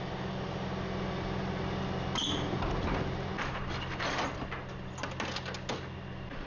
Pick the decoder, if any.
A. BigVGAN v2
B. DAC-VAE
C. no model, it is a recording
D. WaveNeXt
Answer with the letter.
C